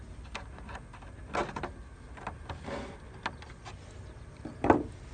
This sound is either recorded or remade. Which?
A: recorded